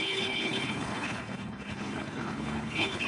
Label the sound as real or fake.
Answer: fake